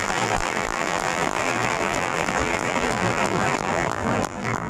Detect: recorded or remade remade